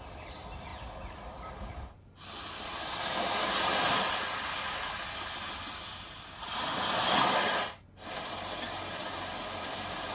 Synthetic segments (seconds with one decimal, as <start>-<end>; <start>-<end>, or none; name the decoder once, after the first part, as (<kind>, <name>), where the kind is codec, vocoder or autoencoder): none